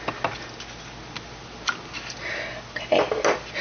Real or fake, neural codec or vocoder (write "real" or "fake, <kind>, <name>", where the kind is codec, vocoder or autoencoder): real